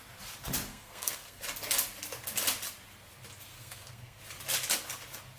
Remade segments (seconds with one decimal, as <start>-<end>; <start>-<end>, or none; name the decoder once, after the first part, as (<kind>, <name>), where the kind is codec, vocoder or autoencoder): 0.7-1.4 (codec, SNAC); 3.5-4.2